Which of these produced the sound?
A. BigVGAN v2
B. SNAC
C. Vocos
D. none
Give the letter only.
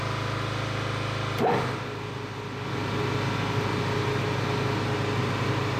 D